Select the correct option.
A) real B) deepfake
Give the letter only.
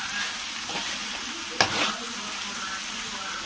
A